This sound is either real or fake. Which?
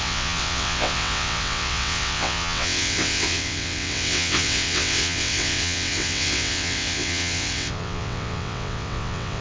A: fake